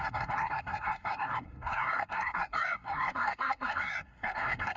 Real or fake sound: fake